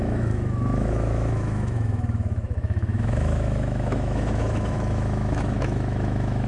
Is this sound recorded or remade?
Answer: remade